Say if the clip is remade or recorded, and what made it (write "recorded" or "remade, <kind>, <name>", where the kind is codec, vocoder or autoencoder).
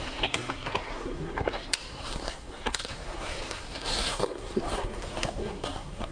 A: remade, codec, SNAC